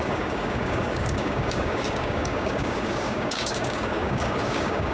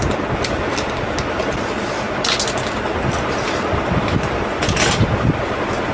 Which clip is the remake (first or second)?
first